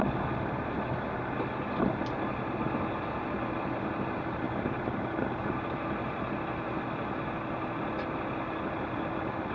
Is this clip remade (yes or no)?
no